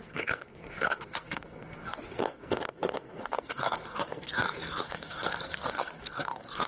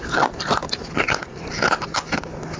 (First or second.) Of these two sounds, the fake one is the first